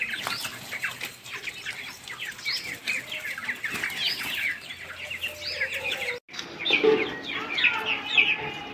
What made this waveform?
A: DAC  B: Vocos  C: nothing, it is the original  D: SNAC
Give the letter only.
C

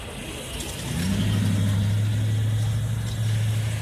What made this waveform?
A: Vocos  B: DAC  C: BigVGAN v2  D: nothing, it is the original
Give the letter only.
D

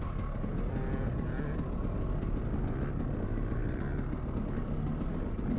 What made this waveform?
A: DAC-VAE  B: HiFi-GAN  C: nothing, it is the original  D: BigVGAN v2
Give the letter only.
C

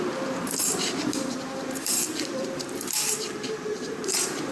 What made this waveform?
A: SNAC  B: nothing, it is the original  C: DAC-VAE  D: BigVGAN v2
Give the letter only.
D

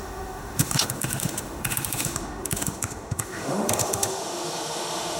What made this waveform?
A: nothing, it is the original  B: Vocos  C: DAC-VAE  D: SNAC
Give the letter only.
C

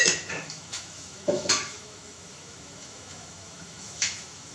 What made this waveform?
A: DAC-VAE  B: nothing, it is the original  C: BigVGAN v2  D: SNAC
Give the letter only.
A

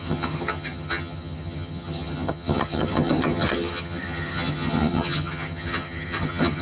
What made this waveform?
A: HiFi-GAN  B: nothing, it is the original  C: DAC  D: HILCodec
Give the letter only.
A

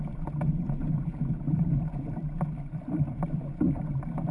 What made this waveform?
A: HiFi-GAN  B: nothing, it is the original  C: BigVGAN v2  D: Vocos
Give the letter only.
C